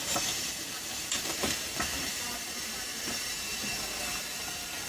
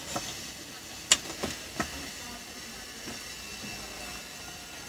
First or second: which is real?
second